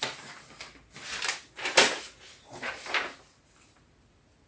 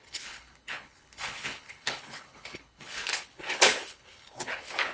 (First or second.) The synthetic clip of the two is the second